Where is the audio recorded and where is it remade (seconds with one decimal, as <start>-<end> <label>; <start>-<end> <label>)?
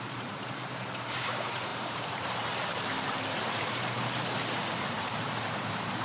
0.0-6.0 remade